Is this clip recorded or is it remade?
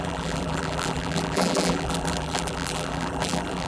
remade